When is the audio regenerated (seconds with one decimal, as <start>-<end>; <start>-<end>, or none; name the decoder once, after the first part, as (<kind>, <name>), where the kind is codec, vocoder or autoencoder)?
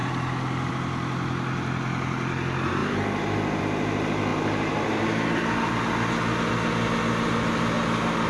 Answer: none